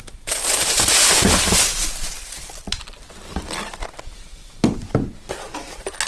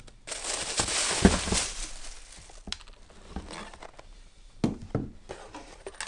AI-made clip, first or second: first